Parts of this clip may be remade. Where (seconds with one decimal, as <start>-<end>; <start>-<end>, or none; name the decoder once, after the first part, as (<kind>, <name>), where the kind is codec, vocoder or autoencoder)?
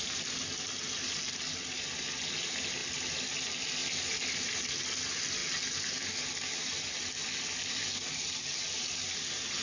none